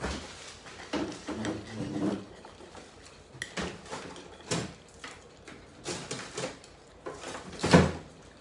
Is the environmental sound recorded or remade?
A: recorded